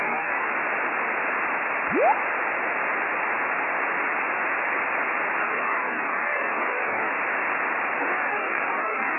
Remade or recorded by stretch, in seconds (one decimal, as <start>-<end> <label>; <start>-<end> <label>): 0.0-0.5 remade; 0.5-5.4 recorded; 5.4-7.1 remade; 7.1-8.0 recorded; 8.0-9.2 remade